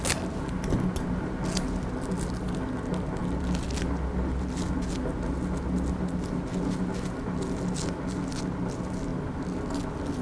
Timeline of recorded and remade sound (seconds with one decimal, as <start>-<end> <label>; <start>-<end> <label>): 0.0-10.2 recorded